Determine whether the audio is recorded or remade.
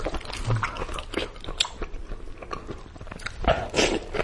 recorded